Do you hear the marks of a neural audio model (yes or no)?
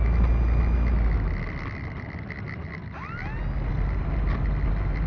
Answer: no